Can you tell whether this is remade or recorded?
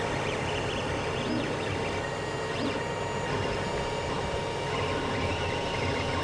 recorded